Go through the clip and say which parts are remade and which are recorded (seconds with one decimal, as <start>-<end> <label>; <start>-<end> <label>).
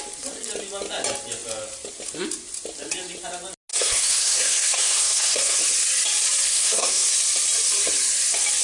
0.0-3.7 recorded; 3.7-5.6 remade; 5.6-6.5 recorded; 6.5-7.1 remade; 7.1-8.6 recorded